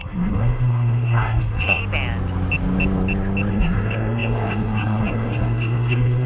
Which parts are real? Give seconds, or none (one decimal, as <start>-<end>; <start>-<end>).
1.8-3.5